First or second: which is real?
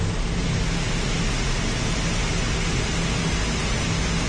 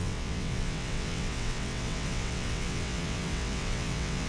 first